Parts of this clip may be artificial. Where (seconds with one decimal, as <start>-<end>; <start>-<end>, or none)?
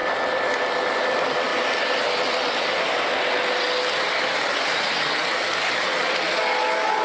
none